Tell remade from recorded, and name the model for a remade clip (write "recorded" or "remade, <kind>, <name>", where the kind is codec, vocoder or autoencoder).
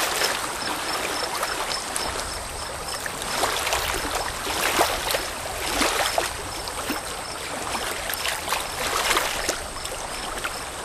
recorded